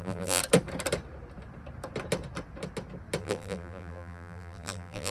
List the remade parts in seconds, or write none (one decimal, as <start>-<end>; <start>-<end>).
0.0-0.4; 3.2-5.1

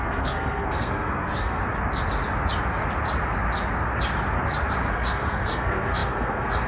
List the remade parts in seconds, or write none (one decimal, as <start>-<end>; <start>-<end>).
0.0-1.6; 4.9-6.7

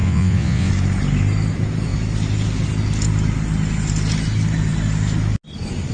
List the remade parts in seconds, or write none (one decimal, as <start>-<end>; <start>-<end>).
0.0-0.7

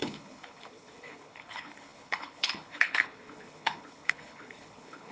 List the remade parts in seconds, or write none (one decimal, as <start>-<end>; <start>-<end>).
0.0-5.1

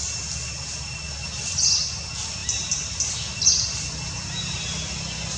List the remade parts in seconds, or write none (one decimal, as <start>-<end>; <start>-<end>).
none

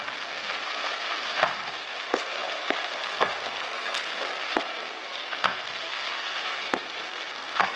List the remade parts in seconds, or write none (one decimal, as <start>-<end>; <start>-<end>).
0.0-7.8

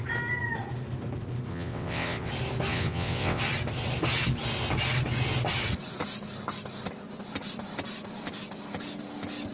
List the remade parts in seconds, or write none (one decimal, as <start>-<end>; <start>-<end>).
1.5-2.3; 2.7-3.4

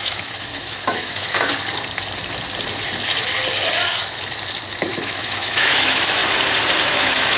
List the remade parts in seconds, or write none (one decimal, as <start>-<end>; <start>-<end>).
0.0-1.5; 5.0-6.2; 6.8-7.4